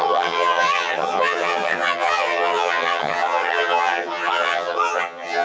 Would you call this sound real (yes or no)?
no